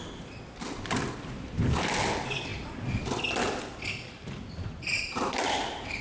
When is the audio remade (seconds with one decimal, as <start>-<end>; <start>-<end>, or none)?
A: none